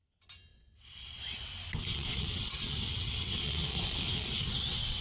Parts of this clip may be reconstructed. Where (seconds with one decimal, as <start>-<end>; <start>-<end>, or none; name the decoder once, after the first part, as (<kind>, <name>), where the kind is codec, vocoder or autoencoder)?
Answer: 0.5-1.5 (vocoder, WaveNeXt); 1.9-5.0